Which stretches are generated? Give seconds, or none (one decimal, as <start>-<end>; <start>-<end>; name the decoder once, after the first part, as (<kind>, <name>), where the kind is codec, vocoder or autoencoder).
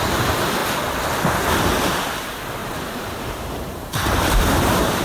2.6-5.0 (vocoder, BigVGAN v2)